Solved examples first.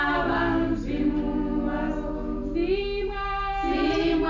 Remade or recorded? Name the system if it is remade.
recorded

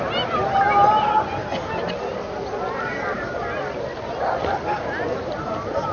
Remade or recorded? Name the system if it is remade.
recorded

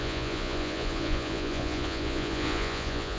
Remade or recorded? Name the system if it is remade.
remade, vocoder, Vocos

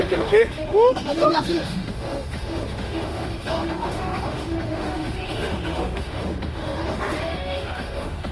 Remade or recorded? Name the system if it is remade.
remade, autoencoder, DAC-VAE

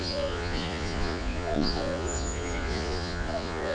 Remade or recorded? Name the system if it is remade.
remade, vocoder, Vocos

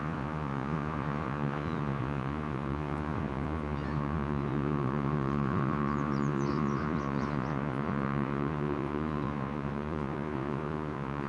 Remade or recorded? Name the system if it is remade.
remade, vocoder, Vocos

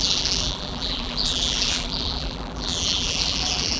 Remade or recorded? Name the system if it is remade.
remade, vocoder, BigVGAN v2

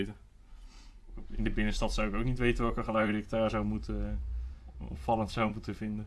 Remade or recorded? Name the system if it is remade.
remade, vocoder, Vocos